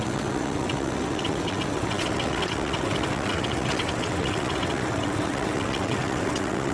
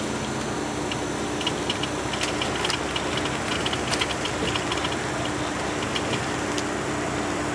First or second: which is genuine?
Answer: second